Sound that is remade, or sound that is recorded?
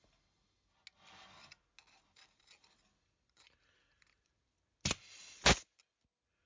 recorded